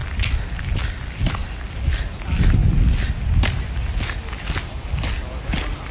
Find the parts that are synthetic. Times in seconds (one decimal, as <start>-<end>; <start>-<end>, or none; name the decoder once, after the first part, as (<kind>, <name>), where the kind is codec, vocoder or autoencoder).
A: none